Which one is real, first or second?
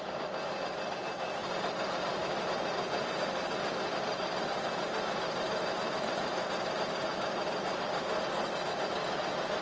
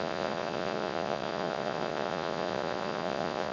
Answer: first